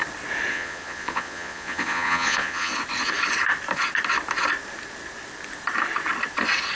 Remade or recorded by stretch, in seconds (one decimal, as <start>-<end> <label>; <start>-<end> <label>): 0.0-0.5 recorded; 0.5-2.7 remade; 2.7-6.8 recorded